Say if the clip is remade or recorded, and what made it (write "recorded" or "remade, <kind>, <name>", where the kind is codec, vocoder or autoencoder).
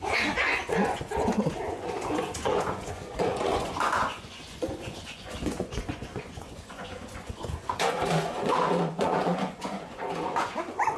remade, vocoder, Vocos